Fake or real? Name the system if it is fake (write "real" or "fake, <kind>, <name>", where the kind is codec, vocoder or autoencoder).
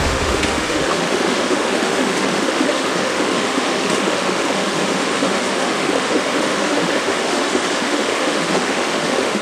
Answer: fake, autoencoder, DAC-VAE